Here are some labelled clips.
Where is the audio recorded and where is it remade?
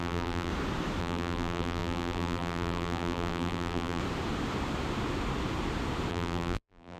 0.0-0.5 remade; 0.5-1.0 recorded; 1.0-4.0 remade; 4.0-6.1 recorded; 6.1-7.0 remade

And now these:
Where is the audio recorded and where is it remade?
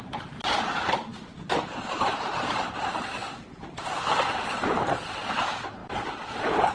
0.0-3.2 remade; 3.2-4.5 recorded; 4.5-5.8 remade; 5.8-6.3 recorded; 6.3-6.7 remade